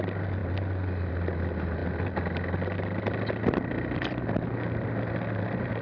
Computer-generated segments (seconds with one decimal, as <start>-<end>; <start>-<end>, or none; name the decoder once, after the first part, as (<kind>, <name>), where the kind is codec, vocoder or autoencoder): none